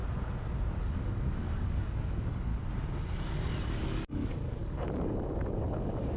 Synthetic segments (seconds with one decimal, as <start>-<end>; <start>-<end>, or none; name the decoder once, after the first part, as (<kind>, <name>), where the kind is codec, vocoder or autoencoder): 0.8-2.5 (codec, DAC); 3.7-6.2